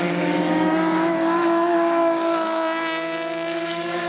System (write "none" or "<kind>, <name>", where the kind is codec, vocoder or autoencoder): codec, DAC